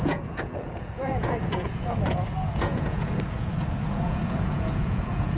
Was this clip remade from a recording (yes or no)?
yes